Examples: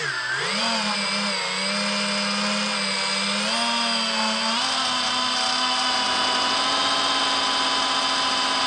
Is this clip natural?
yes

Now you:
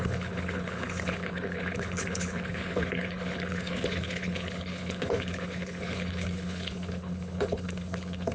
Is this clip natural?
no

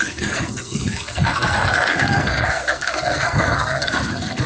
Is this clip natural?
no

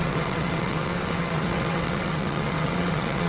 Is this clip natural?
no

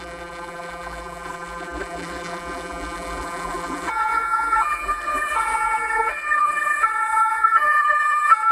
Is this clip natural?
no